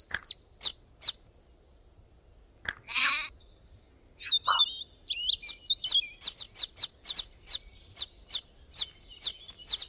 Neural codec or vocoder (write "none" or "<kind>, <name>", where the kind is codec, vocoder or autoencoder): none